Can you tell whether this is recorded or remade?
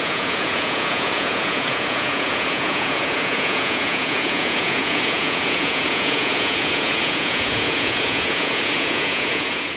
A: remade